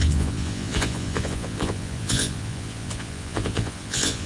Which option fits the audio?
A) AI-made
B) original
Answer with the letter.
A